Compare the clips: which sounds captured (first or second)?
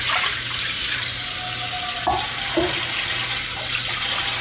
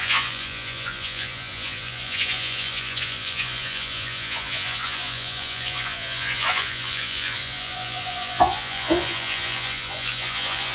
first